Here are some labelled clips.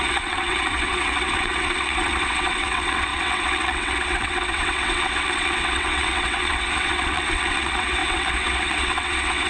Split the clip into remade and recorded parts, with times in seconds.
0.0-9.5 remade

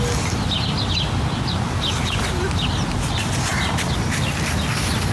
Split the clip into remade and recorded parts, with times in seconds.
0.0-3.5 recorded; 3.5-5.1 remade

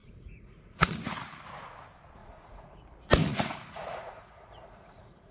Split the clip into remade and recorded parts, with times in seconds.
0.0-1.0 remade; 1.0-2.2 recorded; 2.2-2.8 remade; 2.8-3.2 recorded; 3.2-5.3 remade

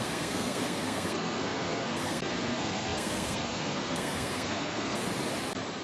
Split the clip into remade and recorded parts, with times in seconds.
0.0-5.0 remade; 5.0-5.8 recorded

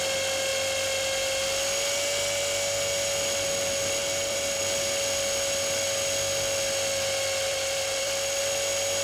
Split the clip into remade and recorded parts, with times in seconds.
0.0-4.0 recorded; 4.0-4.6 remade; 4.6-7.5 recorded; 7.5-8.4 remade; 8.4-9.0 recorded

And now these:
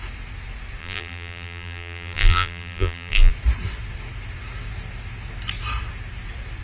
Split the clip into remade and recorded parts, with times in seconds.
0.0-0.8 recorded; 0.8-3.3 remade; 3.3-6.6 recorded

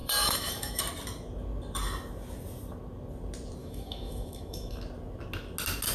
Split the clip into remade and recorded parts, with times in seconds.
0.0-0.8 remade; 0.8-3.6 recorded; 3.6-4.8 remade; 4.8-5.9 recorded

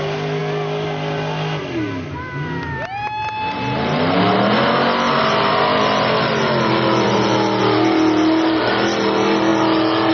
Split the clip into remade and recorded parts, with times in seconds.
0.0-10.1 recorded